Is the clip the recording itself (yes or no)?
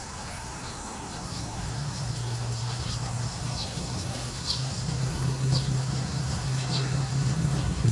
no